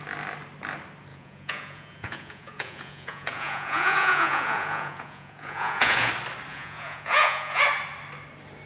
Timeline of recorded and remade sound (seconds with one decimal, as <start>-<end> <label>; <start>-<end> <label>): 0.0-1.1 recorded; 1.1-6.1 remade; 6.1-6.5 recorded; 6.5-7.6 remade; 7.6-8.7 recorded

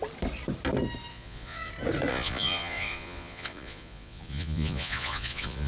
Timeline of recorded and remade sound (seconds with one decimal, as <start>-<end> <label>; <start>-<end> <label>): 0.0-1.1 recorded; 1.1-1.7 remade; 1.7-2.1 recorded; 2.1-5.7 remade